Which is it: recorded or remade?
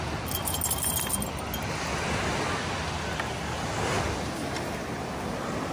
recorded